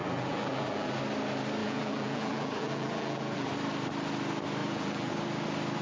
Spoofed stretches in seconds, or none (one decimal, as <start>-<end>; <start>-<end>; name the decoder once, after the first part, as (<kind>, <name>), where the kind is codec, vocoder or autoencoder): 0.0-1.0 (vocoder, BigVGAN v2); 1.6-3.5; 4.6-5.1